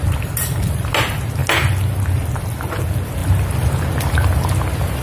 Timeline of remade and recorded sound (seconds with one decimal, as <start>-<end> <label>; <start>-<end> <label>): 0.0-0.4 recorded; 0.4-0.9 remade; 0.9-5.0 recorded